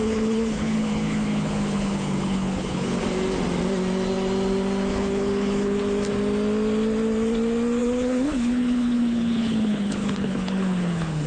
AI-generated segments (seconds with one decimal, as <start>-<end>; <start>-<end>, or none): 0.0-3.0; 4.9-5.8; 7.8-11.3